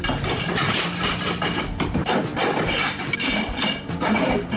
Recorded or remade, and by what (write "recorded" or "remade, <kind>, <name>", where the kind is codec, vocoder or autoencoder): recorded